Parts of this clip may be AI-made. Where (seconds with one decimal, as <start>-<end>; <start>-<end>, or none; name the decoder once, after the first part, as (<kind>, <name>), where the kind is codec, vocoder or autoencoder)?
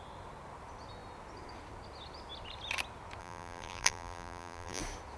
3.2-4.8 (vocoder, BigVGAN v2)